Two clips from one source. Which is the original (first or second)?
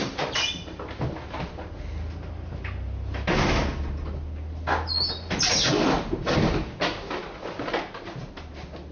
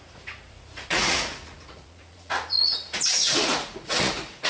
first